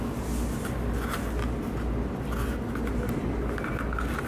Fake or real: real